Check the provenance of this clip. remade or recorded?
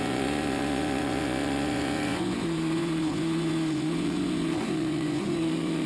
remade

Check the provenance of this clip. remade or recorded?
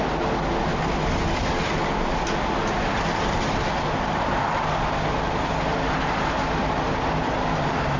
recorded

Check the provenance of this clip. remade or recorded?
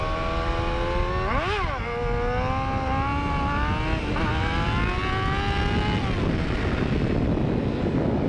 recorded